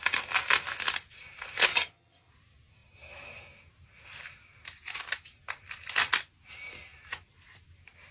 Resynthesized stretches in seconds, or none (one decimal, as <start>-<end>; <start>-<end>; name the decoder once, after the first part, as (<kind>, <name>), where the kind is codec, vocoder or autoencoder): 1.7-2.3 (vocoder, HiFi-GAN)